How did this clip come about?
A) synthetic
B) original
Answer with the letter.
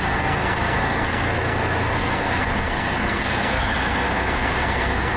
A